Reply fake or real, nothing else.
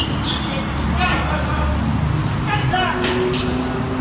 real